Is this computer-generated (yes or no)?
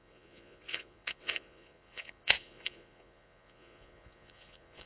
yes